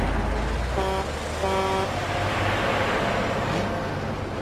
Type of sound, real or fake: real